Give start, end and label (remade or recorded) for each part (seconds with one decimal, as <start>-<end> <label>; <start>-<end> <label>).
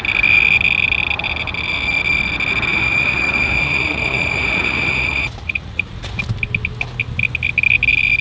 0.0-2.7 recorded; 2.7-6.2 remade; 6.2-8.2 recorded